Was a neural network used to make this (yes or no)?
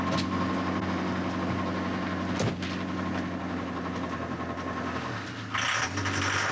no